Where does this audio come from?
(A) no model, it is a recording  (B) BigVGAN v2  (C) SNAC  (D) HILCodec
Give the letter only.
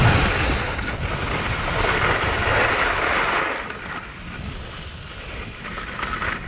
A